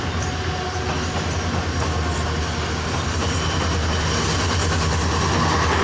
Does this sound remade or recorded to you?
recorded